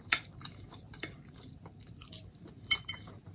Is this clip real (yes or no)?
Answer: no